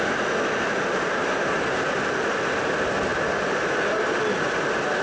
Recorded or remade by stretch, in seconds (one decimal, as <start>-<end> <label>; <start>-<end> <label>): 0.0-5.0 recorded